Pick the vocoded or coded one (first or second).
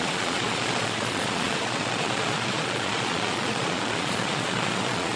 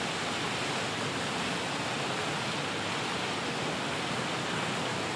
first